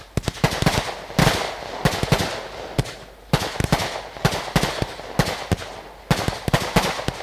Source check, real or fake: real